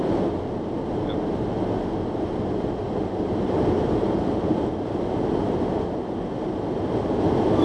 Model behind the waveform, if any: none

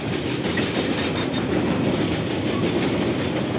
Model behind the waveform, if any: none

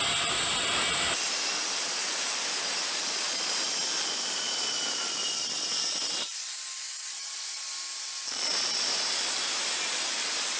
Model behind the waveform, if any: none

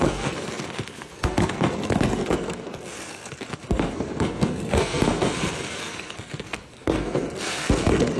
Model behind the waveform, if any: codec, SNAC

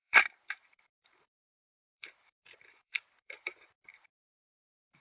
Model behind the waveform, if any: vocoder, BigVGAN v2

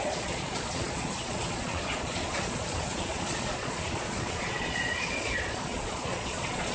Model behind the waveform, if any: vocoder, Vocos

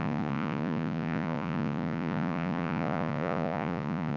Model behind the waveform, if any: vocoder, Vocos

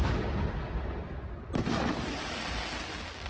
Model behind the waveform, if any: none